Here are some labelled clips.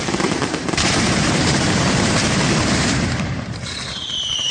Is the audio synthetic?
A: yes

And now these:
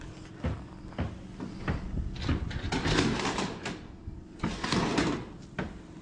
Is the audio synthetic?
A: no